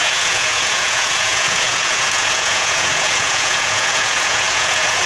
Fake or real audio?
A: fake